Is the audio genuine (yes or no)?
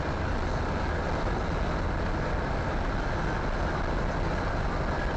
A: yes